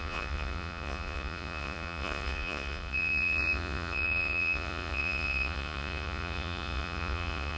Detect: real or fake fake